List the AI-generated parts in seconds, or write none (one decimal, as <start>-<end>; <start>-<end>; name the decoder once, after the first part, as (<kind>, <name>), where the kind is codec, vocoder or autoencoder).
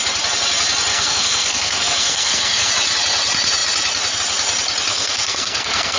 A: 0.9-2.7 (codec, SNAC); 4.9-6.0